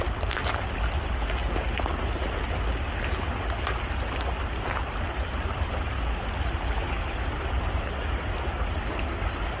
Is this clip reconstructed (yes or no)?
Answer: no